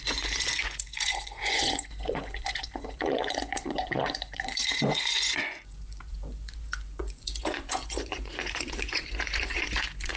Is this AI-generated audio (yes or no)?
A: yes